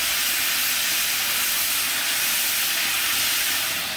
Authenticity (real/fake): real